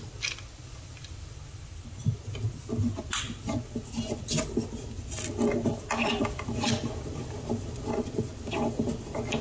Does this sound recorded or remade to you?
recorded